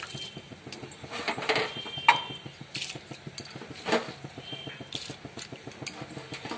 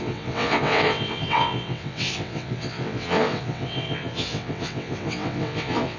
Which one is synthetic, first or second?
second